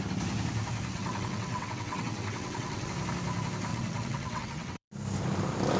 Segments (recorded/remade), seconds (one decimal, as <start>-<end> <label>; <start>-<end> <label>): 0.0-0.9 recorded; 0.9-2.9 remade; 2.9-3.7 recorded; 3.7-4.9 remade; 4.9-5.8 recorded